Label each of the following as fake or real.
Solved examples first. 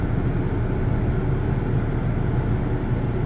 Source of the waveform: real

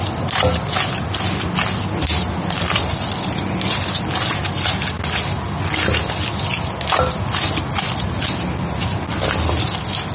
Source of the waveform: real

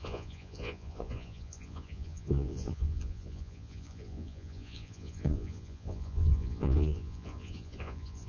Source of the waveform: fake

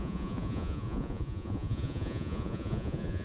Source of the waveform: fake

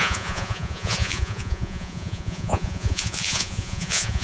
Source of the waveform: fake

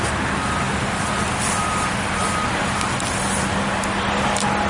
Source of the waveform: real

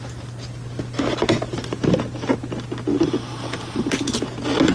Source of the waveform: real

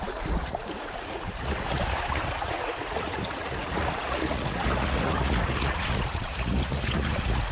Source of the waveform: fake